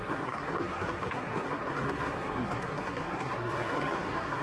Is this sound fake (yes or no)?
yes